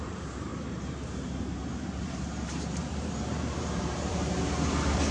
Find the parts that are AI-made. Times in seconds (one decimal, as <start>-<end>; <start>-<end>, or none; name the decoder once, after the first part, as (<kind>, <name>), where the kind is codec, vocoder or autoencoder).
0.0-5.1 (vocoder, BigVGAN v2)